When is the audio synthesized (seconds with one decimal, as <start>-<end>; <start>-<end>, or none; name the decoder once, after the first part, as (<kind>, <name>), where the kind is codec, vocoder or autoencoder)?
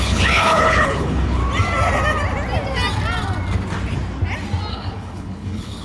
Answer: 0.0-1.4 (codec, HILCodec); 4.7-5.8